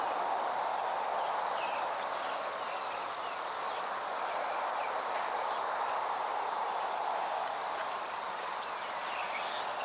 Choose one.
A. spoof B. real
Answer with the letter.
B